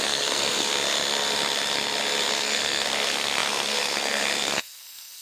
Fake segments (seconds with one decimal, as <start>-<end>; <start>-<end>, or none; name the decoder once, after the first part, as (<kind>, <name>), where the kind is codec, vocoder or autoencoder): 0.0-0.7 (codec, SNAC); 2.3-5.2